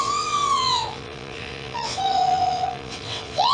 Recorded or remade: remade